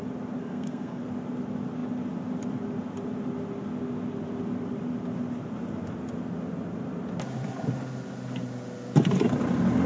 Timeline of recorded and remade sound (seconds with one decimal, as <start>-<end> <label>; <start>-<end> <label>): 0.0-0.4 recorded; 0.4-1.0 remade; 1.0-9.9 recorded